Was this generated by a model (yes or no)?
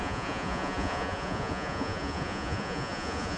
yes